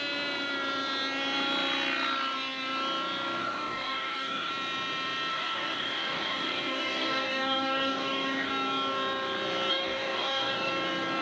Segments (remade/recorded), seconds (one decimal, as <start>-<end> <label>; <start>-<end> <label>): 0.0-3.4 recorded; 3.4-4.5 remade; 4.5-5.3 recorded; 5.3-8.5 remade; 8.5-9.7 recorded; 9.7-10.7 remade; 10.7-11.2 recorded